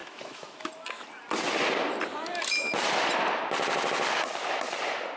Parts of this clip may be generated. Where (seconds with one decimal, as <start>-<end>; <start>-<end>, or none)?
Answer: 0.0-0.7